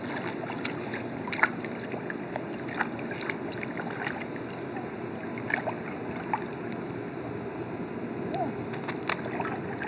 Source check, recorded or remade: recorded